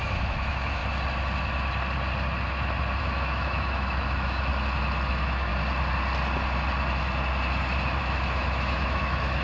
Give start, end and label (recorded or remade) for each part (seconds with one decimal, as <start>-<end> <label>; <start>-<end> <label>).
0.0-0.8 remade; 0.8-3.0 recorded; 3.0-4.5 remade; 4.5-5.1 recorded; 5.1-5.5 remade; 5.5-8.0 recorded; 8.0-9.4 remade

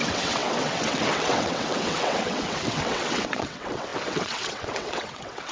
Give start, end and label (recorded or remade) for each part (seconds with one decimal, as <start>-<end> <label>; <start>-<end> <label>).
0.0-5.5 remade

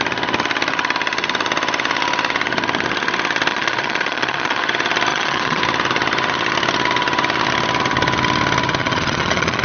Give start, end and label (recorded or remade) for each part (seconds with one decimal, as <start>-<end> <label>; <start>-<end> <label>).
0.0-3.5 recorded; 3.5-4.6 remade; 4.6-5.1 recorded; 5.1-5.6 remade; 5.6-8.8 recorded; 8.8-9.6 remade

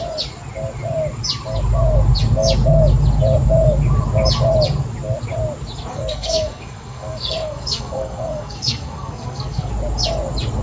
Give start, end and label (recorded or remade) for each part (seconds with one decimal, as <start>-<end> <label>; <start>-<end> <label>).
0.0-5.9 recorded; 5.9-9.7 remade; 9.7-10.6 recorded

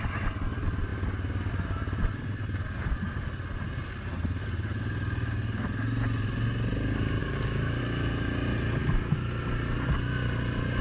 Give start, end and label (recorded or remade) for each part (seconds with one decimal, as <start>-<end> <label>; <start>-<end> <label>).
0.0-7.2 recorded; 7.2-7.8 remade; 7.8-10.8 recorded

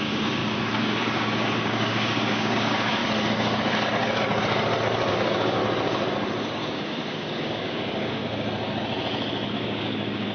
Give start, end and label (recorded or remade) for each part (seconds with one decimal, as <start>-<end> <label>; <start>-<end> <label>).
0.0-3.0 remade; 3.0-5.1 recorded; 5.1-5.6 remade; 5.6-6.5 recorded; 6.5-8.2 remade; 8.2-9.5 recorded; 9.5-10.3 remade